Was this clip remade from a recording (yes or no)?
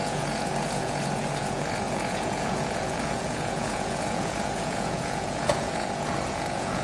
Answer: yes